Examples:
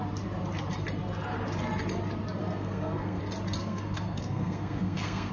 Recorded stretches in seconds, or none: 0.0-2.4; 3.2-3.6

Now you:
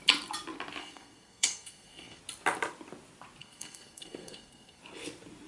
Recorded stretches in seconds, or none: 0.0-0.8; 2.2-3.4; 4.8-5.5

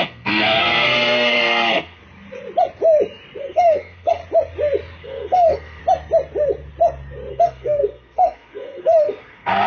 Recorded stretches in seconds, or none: 2.0-3.4; 4.2-5.0; 5.8-7.3

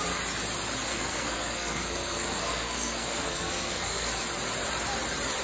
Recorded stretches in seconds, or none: 0.0-0.9; 4.1-5.4

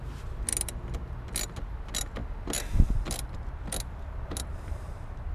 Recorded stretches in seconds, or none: 0.0-5.3